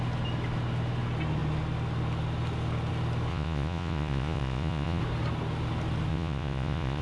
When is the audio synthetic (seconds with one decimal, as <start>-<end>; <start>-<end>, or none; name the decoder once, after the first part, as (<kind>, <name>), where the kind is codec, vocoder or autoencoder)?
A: 3.3-5.0 (vocoder, Vocos); 6.1-7.0